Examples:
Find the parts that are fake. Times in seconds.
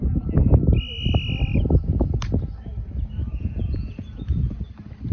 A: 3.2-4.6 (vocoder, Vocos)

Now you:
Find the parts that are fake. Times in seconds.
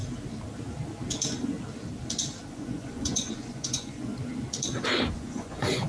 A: 2.5-4.1 (vocoder, Vocos); 5.1-5.9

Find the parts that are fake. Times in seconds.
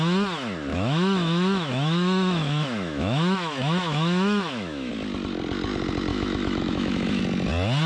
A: 0.7-4.9 (autoencoder, DAC-VAE); 6.1-7.2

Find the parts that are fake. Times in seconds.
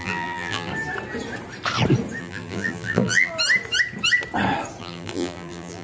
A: 0.0-0.7 (vocoder, BigVGAN v2); 2.2-3.3; 4.8-5.8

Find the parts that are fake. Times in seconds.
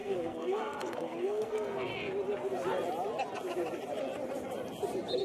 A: 0.0-1.9 (codec, SNAC)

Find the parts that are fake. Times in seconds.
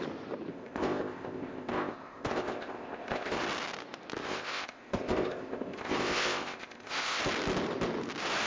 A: 0.5-3.4 (codec, ZipCodec); 4.2-7.2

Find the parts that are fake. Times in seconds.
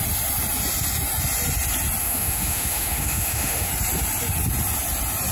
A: 2.0-3.7 (autoencoder, DAC-VAE)